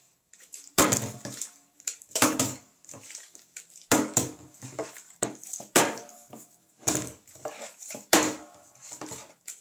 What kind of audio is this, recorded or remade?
remade